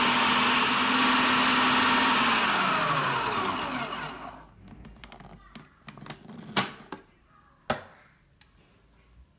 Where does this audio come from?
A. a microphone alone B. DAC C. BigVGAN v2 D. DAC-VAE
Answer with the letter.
A